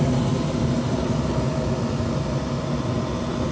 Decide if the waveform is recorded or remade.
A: recorded